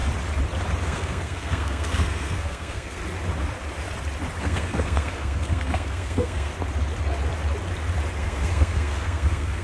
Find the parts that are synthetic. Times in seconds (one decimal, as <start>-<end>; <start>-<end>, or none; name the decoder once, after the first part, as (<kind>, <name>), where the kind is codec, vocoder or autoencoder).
0.8-3.0 (codec, SNAC); 4.4-6.5; 8.2-9.6